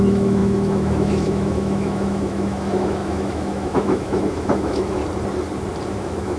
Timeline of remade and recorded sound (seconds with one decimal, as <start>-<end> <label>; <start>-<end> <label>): 0.0-5.0 remade; 5.0-5.9 recorded; 5.9-6.4 remade